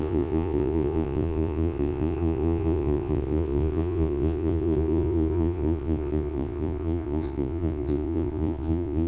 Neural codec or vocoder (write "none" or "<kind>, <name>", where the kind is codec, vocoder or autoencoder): vocoder, Vocos